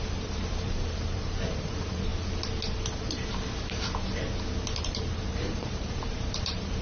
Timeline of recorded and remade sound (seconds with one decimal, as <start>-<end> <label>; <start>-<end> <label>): 0.0-2.1 remade; 2.1-4.8 recorded; 4.8-6.8 remade